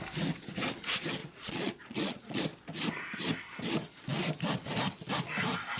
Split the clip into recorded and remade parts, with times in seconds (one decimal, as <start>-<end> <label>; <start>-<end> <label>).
0.0-1.2 recorded; 1.2-2.4 remade; 2.4-5.8 recorded

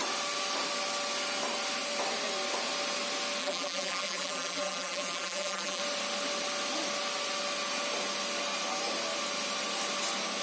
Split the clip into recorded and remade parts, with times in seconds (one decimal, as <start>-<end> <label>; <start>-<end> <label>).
0.0-3.4 recorded; 3.4-5.8 remade; 5.8-10.4 recorded

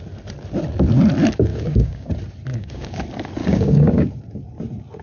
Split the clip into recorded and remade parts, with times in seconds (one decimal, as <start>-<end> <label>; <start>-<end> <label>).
0.0-1.5 recorded; 1.5-2.1 remade; 2.1-2.5 recorded; 2.5-3.0 remade; 3.0-3.4 recorded; 3.4-4.1 remade; 4.1-5.0 recorded

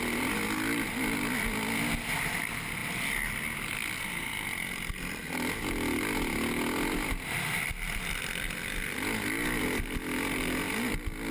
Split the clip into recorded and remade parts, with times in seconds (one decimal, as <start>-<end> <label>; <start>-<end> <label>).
0.0-11.3 recorded

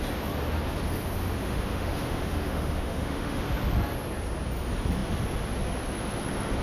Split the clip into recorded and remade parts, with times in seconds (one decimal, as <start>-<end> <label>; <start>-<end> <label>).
0.0-1.4 recorded; 1.4-3.4 remade; 3.4-6.6 recorded

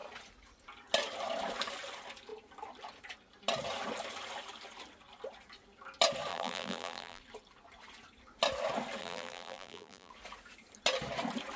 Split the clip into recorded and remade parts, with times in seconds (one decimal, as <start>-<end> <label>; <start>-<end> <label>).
0.0-6.3 recorded; 6.3-7.2 remade; 7.2-9.0 recorded; 9.0-10.1 remade; 10.1-11.6 recorded

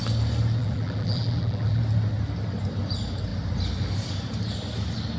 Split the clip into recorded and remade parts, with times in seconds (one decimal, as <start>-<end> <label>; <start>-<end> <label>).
0.0-0.6 recorded; 0.6-1.8 remade; 1.8-5.2 recorded

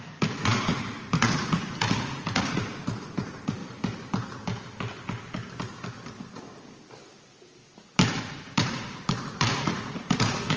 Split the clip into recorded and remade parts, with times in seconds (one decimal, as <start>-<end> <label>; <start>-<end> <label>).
0.0-3.6 remade; 3.6-8.2 recorded; 8.2-10.6 remade